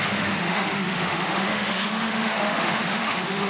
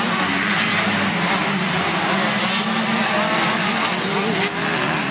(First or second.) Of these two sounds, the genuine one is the second